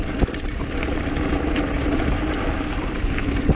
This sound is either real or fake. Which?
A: fake